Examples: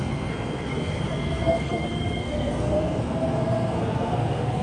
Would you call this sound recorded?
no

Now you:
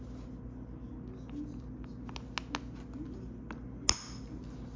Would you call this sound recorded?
yes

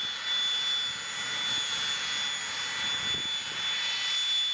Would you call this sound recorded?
yes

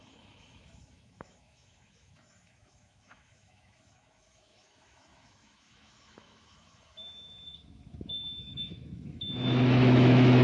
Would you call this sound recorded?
no